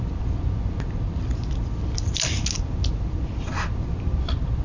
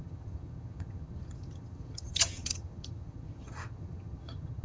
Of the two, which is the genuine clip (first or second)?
first